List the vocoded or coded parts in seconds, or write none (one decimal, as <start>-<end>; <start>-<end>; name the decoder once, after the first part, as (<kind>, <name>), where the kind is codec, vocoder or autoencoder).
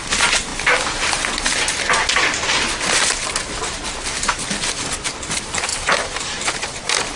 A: 5.7-6.8 (vocoder, BigVGAN v2)